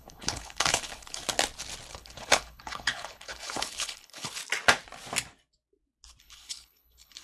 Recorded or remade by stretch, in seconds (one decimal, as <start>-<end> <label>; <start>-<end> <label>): 0.0-1.2 remade; 1.2-1.9 recorded; 1.9-4.4 remade; 4.4-6.2 recorded; 6.2-7.2 remade